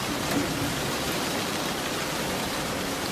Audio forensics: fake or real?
real